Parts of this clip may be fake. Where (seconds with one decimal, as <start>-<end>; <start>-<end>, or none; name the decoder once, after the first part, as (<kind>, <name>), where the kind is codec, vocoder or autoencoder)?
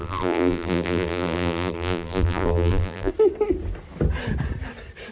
0.0-3.1 (vocoder, BigVGAN v2)